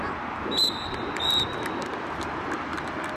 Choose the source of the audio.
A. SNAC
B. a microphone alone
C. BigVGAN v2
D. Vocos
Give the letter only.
C